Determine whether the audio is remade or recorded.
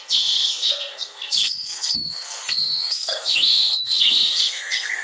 remade